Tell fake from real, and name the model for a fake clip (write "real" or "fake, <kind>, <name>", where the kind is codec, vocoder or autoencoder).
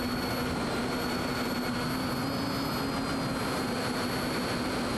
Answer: real